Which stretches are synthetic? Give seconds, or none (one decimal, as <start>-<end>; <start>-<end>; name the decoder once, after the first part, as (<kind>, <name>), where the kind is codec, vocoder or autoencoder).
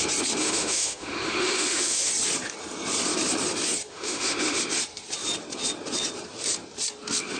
0.4-2.1 (autoencoder, DAC-VAE); 3.9-4.6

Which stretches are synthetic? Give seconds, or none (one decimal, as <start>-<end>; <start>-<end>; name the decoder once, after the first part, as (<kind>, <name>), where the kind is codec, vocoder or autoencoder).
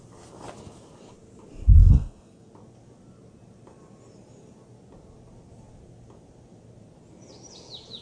1.8-2.5 (codec, SNAC)